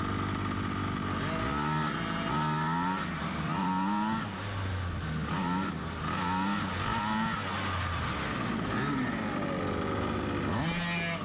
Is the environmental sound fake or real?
real